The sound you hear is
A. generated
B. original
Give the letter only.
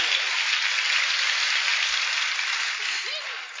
B